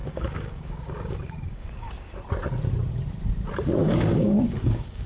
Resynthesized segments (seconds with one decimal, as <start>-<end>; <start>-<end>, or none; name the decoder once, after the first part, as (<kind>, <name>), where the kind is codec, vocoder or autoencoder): 0.0-2.1 (codec, DAC); 3.8-5.1